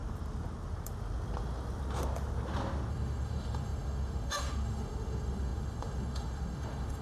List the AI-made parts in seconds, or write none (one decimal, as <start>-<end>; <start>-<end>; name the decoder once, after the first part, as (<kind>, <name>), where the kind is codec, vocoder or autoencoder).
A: 2.9-7.0 (autoencoder, DAC-VAE)